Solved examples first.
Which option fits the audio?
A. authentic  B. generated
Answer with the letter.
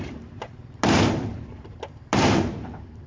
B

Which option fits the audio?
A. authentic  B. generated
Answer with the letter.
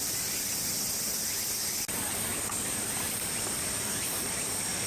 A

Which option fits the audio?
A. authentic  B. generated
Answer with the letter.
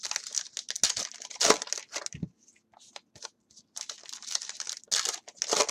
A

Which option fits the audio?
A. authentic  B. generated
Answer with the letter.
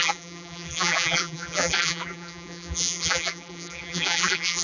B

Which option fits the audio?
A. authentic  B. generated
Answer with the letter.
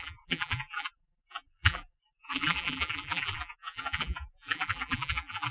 B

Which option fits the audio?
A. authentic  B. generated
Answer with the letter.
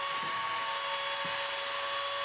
B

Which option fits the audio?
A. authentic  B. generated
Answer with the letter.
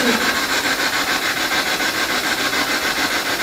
B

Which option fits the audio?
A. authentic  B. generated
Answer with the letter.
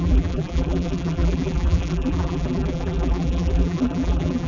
B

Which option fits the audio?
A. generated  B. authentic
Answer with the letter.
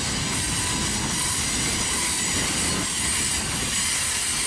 B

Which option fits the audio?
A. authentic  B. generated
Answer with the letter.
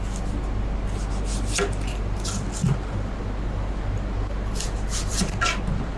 A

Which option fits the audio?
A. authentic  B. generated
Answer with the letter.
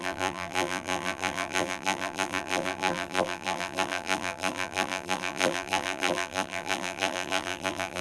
B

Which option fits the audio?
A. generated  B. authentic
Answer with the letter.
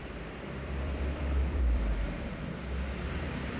A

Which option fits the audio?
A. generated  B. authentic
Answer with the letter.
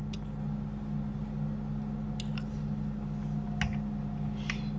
B